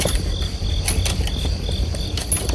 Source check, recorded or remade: recorded